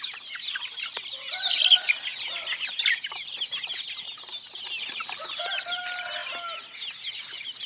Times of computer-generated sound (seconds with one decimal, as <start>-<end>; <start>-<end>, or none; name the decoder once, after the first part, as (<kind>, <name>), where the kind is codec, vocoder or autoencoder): none